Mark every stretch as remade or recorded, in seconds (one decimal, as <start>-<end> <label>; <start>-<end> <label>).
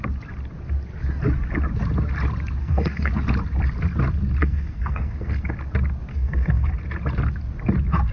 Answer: 0.0-2.6 recorded; 2.6-3.1 remade; 3.1-4.4 recorded; 4.4-5.5 remade; 5.5-6.1 recorded; 6.1-6.7 remade; 6.7-8.1 recorded